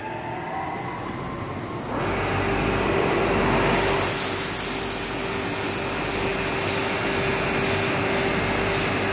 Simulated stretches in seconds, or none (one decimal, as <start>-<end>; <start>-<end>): none